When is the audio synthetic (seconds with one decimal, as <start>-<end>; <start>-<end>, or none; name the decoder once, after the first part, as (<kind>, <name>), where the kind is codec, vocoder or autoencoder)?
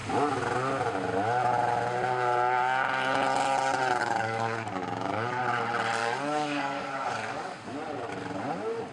4.0-5.4 (codec, DAC); 6.0-7.6